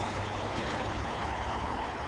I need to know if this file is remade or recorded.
remade